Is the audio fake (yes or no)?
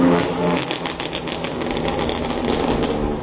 no